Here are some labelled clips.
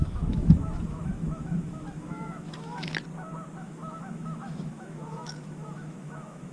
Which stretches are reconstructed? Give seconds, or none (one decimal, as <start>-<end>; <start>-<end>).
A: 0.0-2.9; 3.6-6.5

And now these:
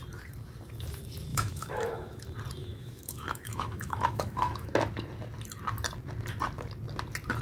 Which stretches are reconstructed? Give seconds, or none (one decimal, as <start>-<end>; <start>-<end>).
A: 1.3-2.2; 2.6-4.7

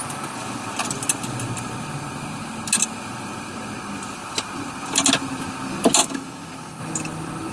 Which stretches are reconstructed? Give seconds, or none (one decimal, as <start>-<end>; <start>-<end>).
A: 6.0-6.8

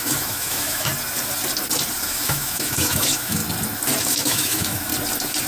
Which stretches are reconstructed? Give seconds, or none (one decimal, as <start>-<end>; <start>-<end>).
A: 0.0-0.9; 2.0-3.4; 4.0-4.9